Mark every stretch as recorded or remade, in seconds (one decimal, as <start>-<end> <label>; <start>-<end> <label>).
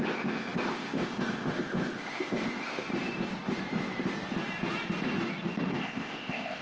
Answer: 0.0-2.9 remade; 2.9-5.7 recorded; 5.7-6.6 remade